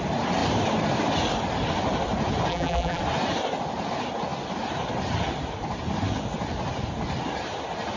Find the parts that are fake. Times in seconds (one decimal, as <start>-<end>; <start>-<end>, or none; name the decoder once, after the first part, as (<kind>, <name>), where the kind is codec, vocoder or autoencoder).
2.5-3.0 (vocoder, BigVGAN v2)